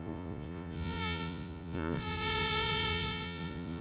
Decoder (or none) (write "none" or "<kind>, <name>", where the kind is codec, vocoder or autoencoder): vocoder, Vocos